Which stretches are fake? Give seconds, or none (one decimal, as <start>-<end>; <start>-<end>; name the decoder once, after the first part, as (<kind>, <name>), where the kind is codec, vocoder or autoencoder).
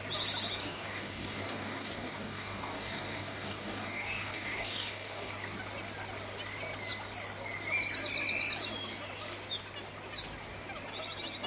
0.6-5.3 (codec, DAC)